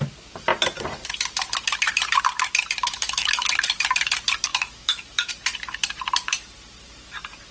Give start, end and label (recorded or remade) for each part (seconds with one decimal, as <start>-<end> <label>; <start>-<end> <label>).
0.0-2.8 recorded; 2.8-3.5 remade; 3.5-4.5 recorded; 4.5-5.3 remade; 5.3-7.5 recorded